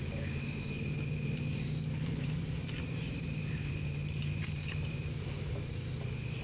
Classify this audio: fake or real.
fake